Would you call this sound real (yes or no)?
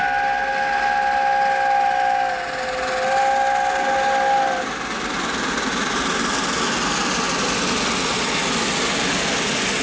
yes